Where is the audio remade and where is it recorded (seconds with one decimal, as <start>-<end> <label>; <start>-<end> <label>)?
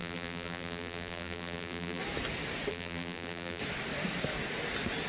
0.0-2.0 remade; 2.0-2.7 recorded; 2.7-3.6 remade; 3.6-5.1 recorded